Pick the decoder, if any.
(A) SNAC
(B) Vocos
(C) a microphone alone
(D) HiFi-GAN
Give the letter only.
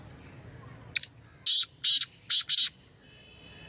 C